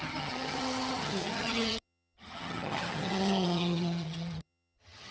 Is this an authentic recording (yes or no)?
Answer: no